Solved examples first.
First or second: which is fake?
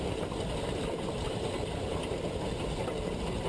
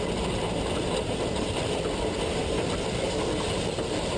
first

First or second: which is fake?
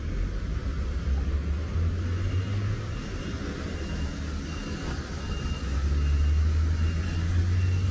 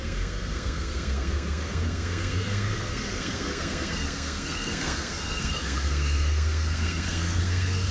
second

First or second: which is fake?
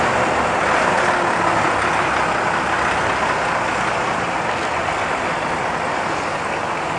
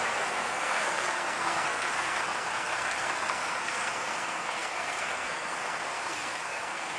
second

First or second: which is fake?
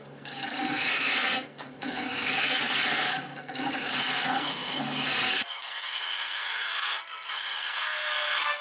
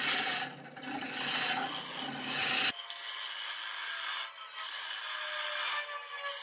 first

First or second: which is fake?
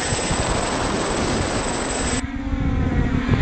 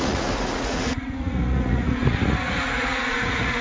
second